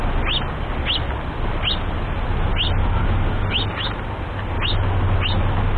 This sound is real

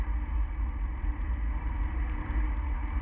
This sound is real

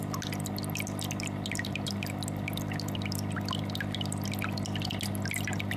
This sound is real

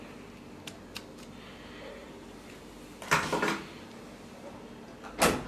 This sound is real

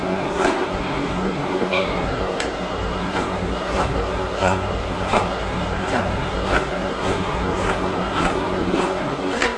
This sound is fake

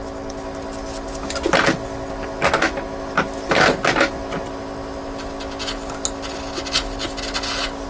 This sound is real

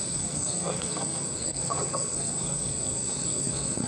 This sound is fake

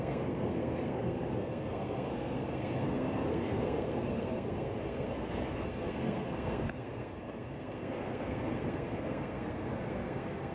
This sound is fake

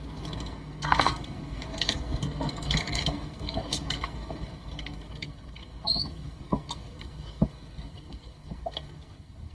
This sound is fake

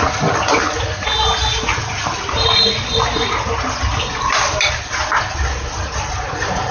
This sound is real